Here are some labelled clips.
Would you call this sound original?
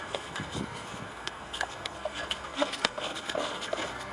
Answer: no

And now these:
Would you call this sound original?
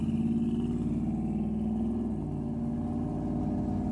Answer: yes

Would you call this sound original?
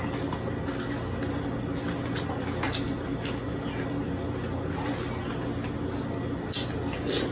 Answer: yes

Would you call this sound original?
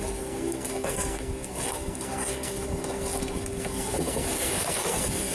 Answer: no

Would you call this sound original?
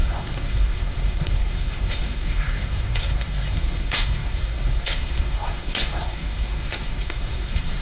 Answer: no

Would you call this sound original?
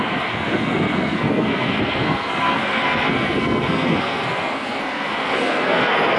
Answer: no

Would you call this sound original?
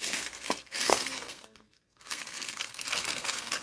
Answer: no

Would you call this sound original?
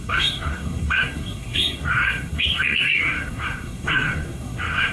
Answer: no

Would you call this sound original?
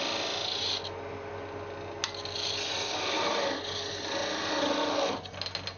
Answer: yes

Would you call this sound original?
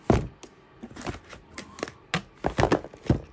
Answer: yes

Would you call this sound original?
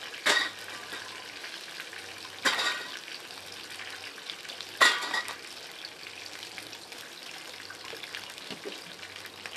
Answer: yes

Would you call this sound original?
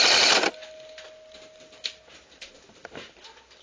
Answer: yes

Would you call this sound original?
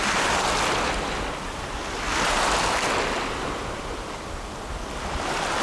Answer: yes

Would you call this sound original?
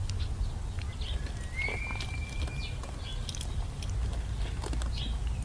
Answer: yes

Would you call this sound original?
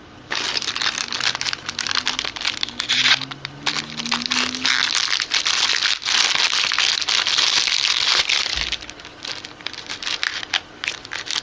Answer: yes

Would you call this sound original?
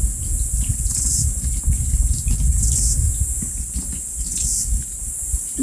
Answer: yes